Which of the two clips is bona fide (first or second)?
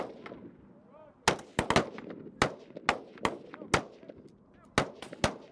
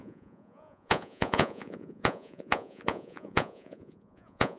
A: first